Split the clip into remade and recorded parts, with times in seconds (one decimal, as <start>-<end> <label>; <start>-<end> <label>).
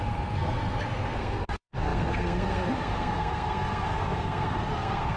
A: 0.0-5.2 remade